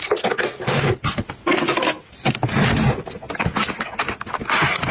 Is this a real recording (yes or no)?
yes